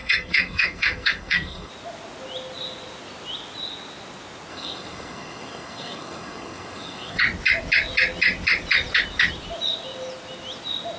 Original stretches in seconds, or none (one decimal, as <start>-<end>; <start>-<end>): 1.7-4.5; 7.2-11.0